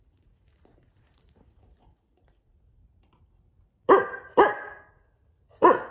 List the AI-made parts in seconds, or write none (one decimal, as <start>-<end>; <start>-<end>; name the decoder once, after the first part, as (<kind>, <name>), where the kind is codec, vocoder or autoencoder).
0.0-2.8 (vocoder, Vocos); 4.9-5.9